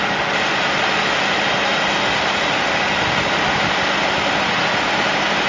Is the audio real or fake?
real